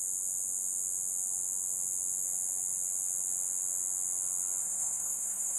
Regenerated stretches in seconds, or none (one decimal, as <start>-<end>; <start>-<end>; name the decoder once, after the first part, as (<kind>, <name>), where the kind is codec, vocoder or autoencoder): 4.6-5.6 (codec, SNAC)